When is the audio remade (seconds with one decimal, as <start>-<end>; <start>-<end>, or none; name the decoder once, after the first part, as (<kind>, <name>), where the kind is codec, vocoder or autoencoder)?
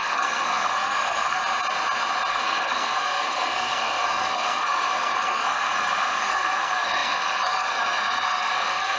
0.0-1.4 (codec, SNAC); 2.3-9.0